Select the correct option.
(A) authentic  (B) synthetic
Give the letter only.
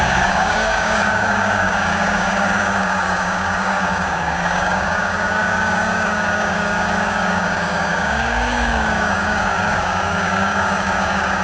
B